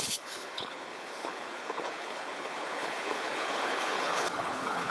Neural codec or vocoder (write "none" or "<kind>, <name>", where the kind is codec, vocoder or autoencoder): codec, HILCodec